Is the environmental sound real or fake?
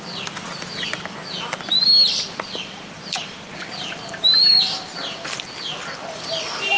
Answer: real